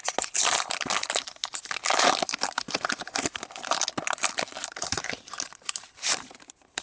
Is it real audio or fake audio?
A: real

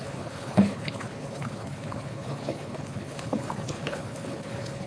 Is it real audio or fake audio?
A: fake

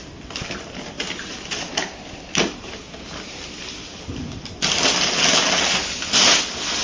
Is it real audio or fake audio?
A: real